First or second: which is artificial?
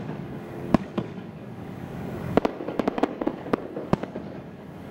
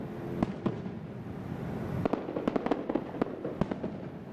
first